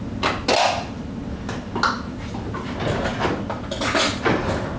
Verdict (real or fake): real